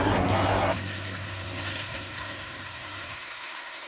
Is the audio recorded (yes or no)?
no